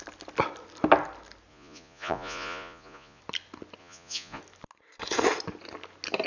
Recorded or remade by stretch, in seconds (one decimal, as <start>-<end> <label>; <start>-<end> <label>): 0.0-1.5 recorded; 1.5-3.2 remade; 3.2-3.8 recorded; 3.8-4.4 remade; 4.4-6.3 recorded